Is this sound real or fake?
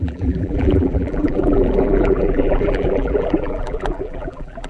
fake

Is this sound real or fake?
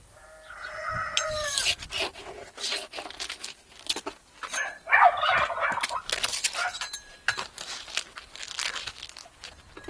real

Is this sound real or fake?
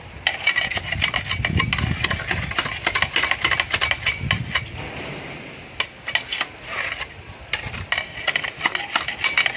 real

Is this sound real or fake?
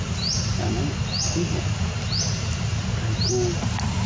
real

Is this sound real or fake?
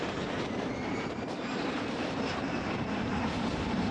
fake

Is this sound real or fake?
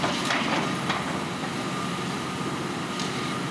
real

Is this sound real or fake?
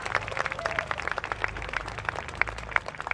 fake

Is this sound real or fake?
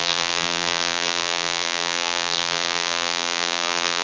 fake